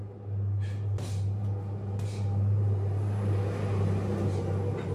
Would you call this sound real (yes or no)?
yes